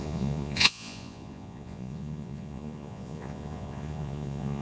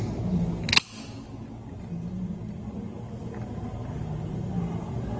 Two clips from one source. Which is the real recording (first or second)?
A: second